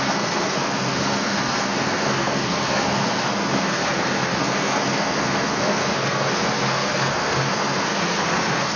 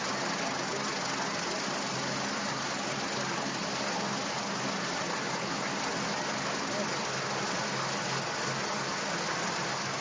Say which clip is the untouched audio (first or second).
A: second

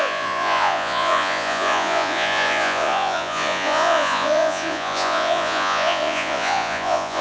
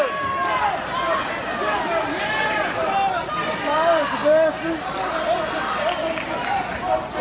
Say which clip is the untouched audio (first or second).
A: second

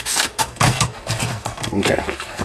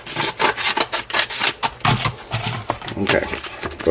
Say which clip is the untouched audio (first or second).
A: second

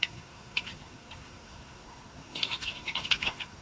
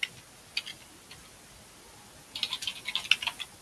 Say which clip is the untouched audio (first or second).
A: second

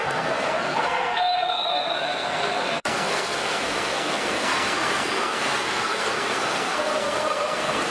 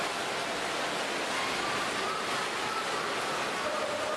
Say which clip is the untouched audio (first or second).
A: second